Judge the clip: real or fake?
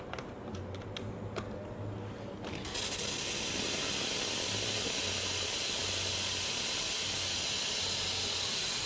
real